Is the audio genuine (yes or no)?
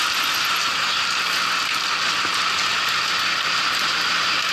yes